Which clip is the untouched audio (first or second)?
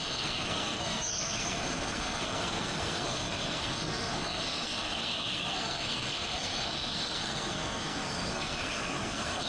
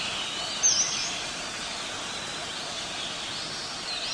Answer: second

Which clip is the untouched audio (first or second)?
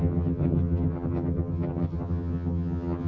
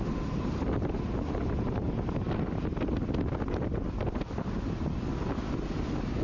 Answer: second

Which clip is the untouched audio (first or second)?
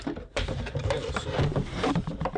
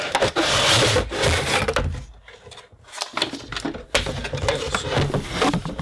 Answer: second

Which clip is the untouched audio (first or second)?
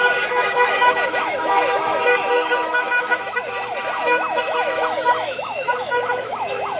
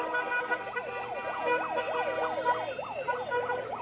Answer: second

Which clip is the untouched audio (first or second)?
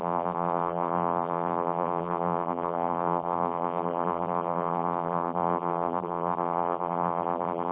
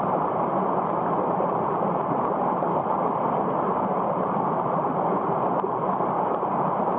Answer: second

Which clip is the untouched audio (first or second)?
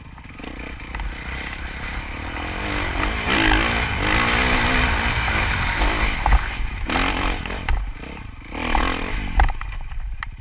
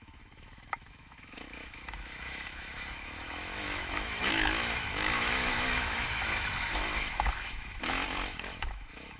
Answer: first